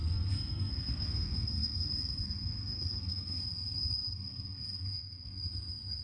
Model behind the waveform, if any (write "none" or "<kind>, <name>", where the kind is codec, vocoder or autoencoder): codec, SNAC